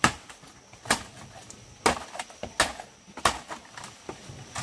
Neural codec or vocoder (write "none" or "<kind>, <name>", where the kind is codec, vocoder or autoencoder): none